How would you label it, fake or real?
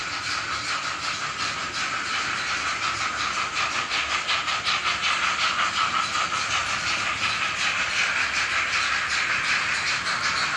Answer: real